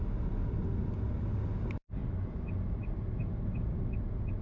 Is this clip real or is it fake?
real